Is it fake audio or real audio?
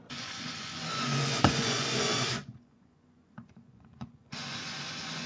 fake